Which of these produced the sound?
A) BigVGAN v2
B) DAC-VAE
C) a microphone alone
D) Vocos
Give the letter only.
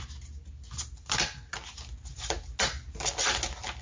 C